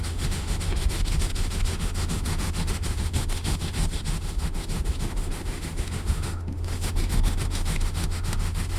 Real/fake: fake